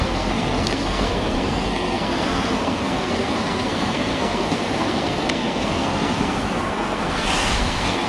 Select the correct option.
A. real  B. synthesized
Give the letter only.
B